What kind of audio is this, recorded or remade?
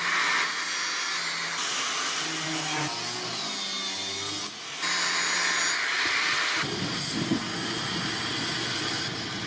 recorded